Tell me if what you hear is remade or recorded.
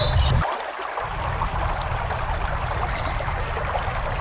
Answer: recorded